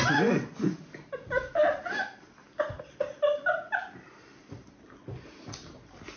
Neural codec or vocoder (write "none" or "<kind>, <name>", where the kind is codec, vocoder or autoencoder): none